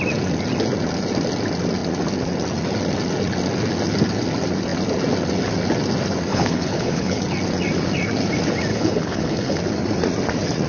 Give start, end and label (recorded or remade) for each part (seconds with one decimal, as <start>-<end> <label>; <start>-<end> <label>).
0.0-6.3 recorded; 6.3-7.2 remade; 7.2-8.7 recorded; 8.7-9.6 remade; 9.6-10.7 recorded